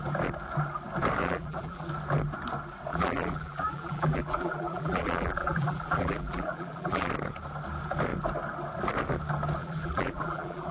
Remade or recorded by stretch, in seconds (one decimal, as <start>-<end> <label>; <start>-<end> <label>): 0.0-1.2 recorded; 1.2-1.9 remade; 1.9-2.9 recorded; 2.9-7.1 remade; 7.1-9.6 recorded; 9.6-10.7 remade